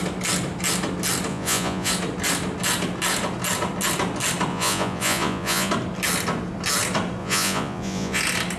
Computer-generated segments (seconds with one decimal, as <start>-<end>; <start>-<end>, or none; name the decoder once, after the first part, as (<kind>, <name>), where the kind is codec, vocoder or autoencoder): 1.3-1.9 (vocoder, Vocos); 4.5-5.7; 7.2-8.2